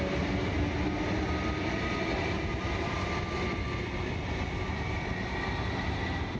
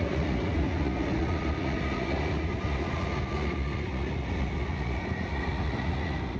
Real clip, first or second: first